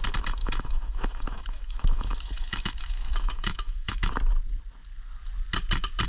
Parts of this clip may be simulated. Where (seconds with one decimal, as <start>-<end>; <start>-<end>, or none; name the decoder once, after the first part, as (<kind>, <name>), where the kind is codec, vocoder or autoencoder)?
0.4-4.1 (autoencoder, DAC-VAE)